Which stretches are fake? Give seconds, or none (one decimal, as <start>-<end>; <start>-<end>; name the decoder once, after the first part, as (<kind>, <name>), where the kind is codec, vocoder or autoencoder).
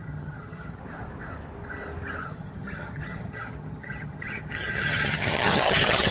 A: 0.0-0.8 (vocoder, HiFi-GAN); 2.2-6.1